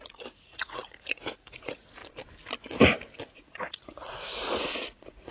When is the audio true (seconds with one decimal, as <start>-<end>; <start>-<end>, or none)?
2.0-3.3